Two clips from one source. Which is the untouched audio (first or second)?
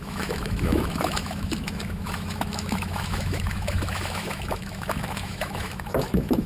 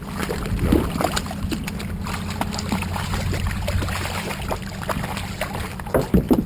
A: second